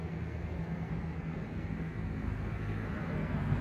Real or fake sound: fake